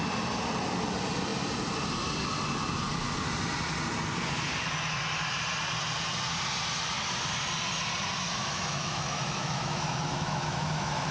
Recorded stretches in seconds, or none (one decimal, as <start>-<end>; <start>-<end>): 0.0-8.4